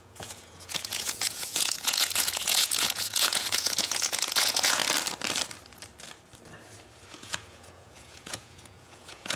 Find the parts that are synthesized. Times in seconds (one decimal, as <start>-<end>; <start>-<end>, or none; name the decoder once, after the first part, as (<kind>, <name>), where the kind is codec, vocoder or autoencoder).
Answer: 0.0-4.8 (vocoder, Vocos); 7.1-9.4